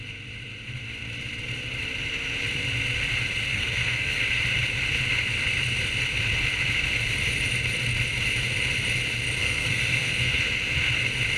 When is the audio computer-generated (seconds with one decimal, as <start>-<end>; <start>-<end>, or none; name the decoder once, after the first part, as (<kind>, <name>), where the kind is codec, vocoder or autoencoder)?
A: 3.5-4.4 (codec, SNAC); 9.4-10.4